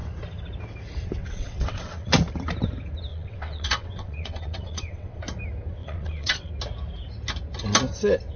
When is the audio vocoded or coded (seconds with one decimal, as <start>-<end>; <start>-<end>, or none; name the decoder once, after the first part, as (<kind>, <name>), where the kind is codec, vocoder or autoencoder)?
1.2-2.1 (vocoder, WaveNeXt); 3.1-5.2; 5.8-6.5